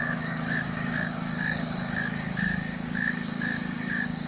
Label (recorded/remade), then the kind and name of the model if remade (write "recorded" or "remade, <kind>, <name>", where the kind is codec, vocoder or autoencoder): remade, codec, DAC